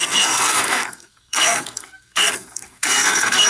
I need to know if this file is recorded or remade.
remade